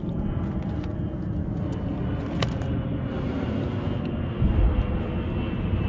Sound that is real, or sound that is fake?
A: real